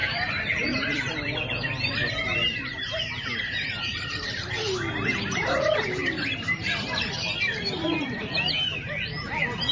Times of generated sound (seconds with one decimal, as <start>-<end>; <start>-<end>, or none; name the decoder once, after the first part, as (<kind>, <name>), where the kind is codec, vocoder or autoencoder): 0.0-2.1 (vocoder, BigVGAN v2); 3.9-5.4